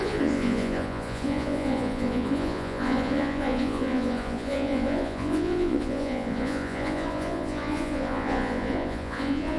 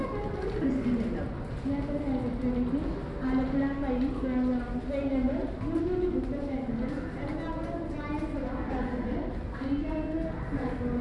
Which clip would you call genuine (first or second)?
second